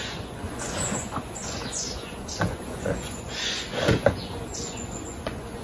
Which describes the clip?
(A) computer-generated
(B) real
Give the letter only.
A